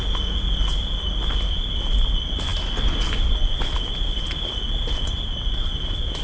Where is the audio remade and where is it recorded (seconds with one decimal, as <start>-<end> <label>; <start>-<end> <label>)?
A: 0.0-6.2 recorded